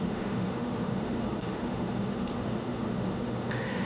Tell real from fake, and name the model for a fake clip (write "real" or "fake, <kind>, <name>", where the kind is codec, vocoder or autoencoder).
fake, autoencoder, DAC-VAE